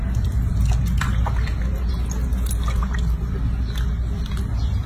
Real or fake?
real